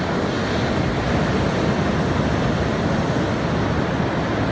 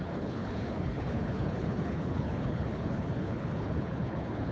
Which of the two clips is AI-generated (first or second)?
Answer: second